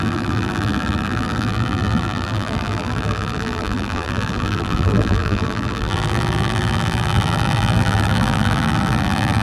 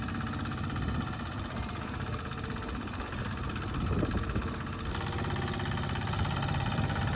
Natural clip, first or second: second